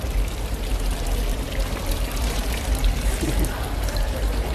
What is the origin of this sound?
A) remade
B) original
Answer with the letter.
A